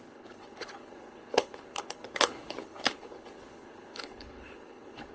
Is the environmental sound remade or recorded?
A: remade